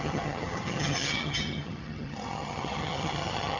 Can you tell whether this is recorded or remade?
remade